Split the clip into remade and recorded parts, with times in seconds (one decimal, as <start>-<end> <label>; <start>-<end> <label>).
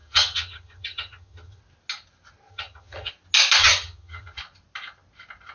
0.0-1.6 remade; 1.6-2.5 recorded; 2.5-3.1 remade; 3.1-3.6 recorded; 3.6-4.4 remade; 4.4-5.5 recorded